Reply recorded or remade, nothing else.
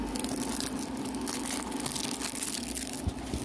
recorded